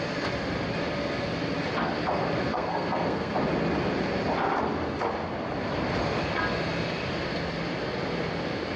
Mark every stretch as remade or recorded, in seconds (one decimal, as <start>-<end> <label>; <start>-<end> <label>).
0.0-2.5 recorded; 2.5-3.3 remade; 3.3-8.8 recorded